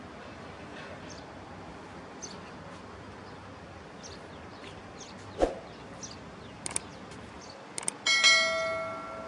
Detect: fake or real real